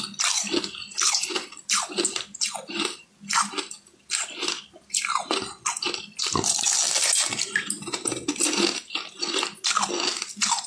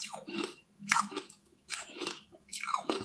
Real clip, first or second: first